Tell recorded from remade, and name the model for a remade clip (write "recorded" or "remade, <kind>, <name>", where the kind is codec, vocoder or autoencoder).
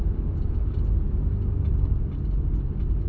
recorded